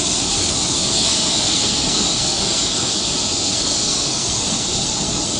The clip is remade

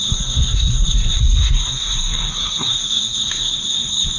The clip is remade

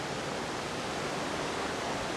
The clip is recorded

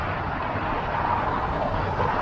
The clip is recorded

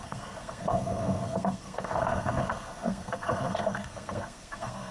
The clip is remade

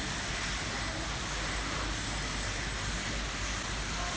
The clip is recorded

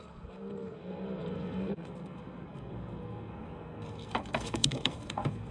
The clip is remade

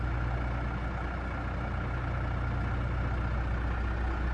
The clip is recorded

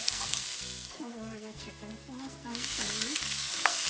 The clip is remade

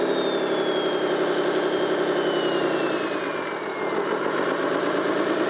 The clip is recorded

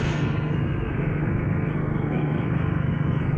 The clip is remade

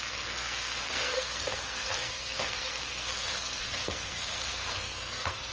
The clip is remade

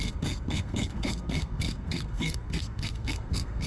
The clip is remade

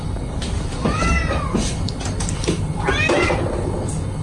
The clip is recorded